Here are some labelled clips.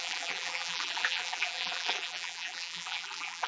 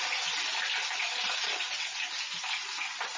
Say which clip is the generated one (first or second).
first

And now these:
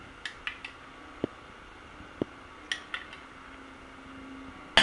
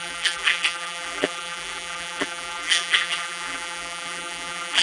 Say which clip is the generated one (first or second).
second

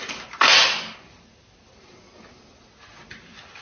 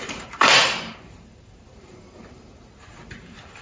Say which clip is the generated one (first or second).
second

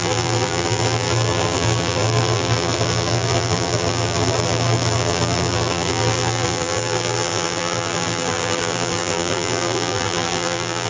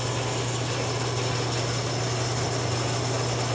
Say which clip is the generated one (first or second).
first